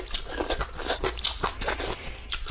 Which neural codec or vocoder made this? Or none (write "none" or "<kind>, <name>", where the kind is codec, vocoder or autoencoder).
none